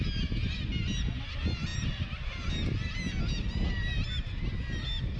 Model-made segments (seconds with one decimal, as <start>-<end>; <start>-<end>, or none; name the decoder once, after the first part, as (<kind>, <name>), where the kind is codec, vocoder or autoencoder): none